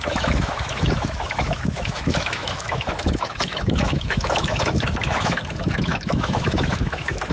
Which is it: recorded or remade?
remade